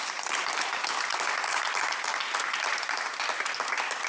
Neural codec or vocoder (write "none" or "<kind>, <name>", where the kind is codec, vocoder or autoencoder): none